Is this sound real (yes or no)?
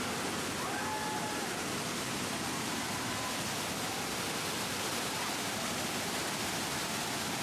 no